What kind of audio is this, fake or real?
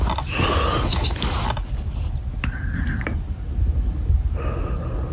real